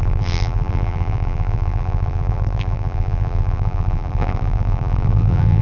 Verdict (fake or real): fake